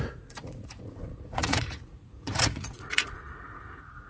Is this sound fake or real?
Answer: fake